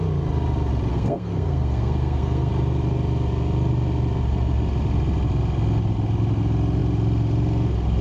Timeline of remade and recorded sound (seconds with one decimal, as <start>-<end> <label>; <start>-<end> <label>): 0.0-0.9 recorded; 0.9-2.5 remade; 2.5-8.0 recorded